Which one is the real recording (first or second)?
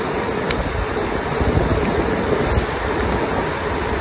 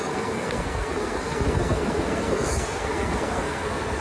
first